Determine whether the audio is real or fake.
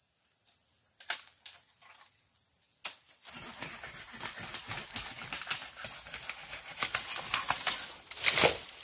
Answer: real